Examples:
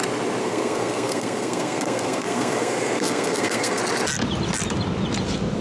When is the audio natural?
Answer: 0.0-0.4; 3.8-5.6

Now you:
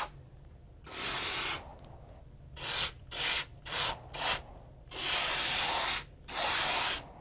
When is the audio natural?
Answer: 0.0-7.2

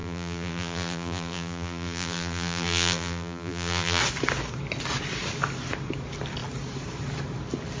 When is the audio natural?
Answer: 4.0-7.8

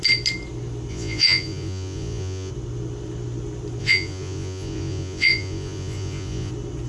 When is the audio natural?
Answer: 0.0-0.9; 2.5-3.8; 6.5-6.9

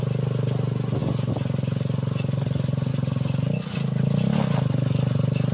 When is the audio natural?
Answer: 0.0-5.5

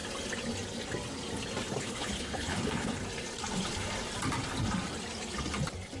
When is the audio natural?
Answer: 0.0-1.8; 3.0-6.0

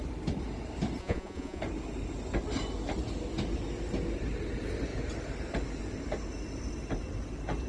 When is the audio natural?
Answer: 0.0-1.0; 1.6-7.7

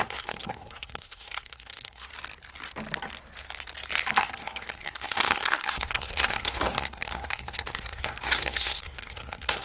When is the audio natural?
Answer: 2.1-4.2